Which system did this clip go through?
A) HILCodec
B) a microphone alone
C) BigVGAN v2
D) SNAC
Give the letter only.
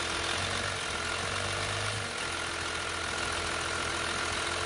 B